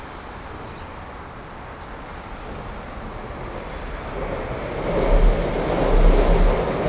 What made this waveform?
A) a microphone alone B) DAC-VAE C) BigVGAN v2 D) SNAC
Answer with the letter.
A